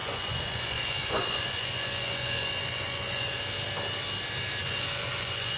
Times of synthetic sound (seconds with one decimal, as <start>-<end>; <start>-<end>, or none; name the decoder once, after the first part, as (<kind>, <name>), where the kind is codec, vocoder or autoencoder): 0.0-3.4 (vocoder, Vocos); 4.6-5.6